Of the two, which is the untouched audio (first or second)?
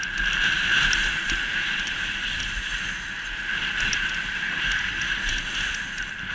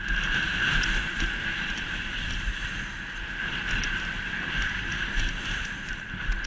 first